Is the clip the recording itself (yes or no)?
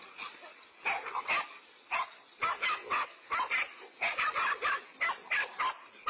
yes